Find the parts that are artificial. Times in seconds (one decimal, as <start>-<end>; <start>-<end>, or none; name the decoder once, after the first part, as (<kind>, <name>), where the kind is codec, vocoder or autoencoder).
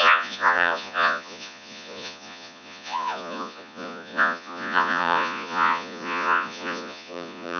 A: 0.0-7.6 (vocoder, Vocos)